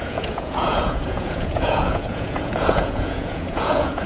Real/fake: fake